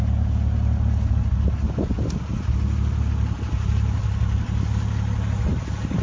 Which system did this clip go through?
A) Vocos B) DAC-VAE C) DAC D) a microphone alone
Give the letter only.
D